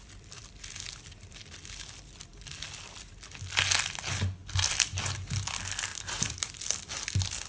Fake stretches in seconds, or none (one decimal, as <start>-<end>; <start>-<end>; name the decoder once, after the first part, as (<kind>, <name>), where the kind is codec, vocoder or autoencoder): 2.3-3.1 (vocoder, BigVGAN v2); 5.9-6.4